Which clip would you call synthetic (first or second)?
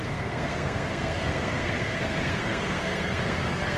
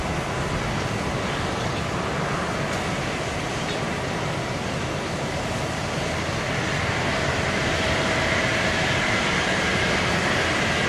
first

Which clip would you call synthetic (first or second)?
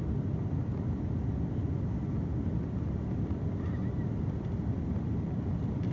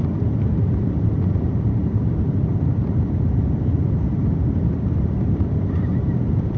second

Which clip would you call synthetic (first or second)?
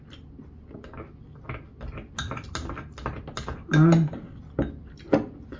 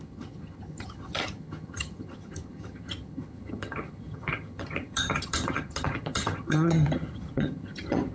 second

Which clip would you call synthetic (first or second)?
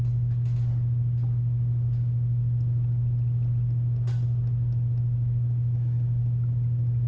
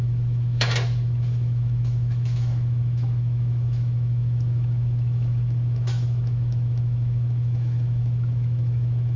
second